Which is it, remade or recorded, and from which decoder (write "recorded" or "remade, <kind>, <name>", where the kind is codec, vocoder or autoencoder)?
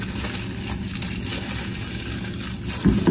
recorded